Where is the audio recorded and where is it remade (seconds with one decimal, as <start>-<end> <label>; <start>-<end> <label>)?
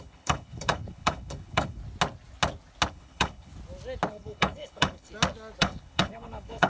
0.0-1.8 remade; 1.8-2.9 recorded; 2.9-3.5 remade; 3.5-4.1 recorded; 4.1-5.1 remade; 5.1-5.6 recorded; 5.6-6.7 remade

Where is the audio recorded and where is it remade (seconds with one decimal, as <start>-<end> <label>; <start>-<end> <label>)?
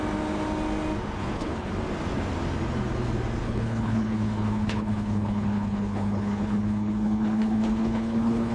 0.0-1.2 recorded; 1.2-1.7 remade; 1.7-3.4 recorded; 3.4-8.5 remade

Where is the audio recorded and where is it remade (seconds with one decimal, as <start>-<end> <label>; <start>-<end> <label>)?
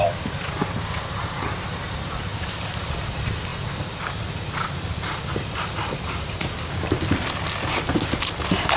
0.0-8.8 recorded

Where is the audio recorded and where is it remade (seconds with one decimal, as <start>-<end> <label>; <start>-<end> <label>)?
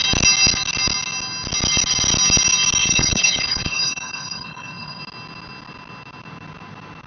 0.0-2.8 recorded; 2.8-5.0 remade; 5.0-7.1 recorded